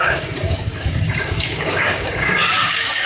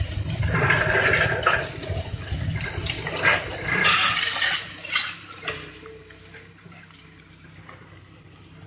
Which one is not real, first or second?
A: first